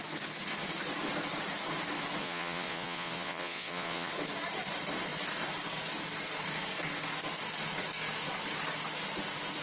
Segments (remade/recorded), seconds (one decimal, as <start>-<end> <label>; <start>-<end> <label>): 0.0-2.2 recorded; 2.2-4.1 remade; 4.1-9.6 recorded